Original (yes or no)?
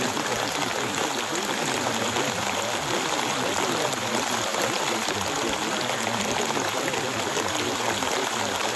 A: yes